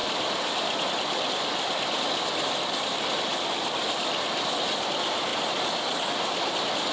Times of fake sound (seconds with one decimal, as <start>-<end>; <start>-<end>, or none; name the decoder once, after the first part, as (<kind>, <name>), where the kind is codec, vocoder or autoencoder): 0.0-3.3 (vocoder, BigVGAN v2); 4.6-5.3; 6.5-6.9